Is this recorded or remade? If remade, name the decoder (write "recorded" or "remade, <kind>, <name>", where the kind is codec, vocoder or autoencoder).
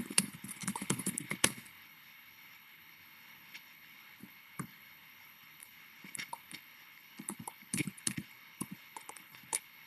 remade, codec, HILCodec